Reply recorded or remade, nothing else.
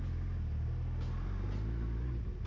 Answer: recorded